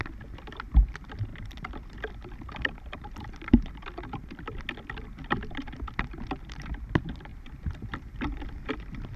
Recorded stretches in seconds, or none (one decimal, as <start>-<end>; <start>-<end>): 0.0-1.3; 4.6-7.3; 8.7-9.2